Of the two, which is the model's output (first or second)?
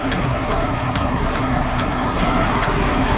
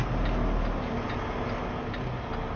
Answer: first